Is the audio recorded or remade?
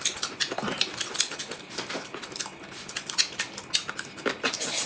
recorded